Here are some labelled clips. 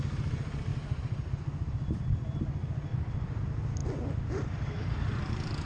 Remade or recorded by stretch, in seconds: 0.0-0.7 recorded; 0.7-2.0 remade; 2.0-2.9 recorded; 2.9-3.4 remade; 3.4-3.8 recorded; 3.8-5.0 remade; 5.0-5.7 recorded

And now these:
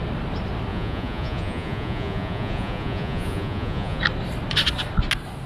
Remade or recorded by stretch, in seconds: 0.0-0.7 recorded; 0.7-4.0 remade; 4.0-5.5 recorded